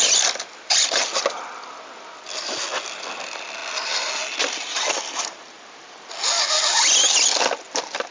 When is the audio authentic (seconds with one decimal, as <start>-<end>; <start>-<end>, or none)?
0.0-8.1